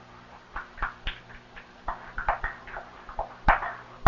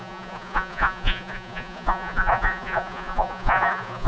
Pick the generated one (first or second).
second